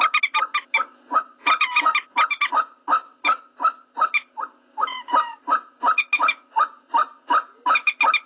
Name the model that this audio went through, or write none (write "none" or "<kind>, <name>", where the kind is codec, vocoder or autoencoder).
none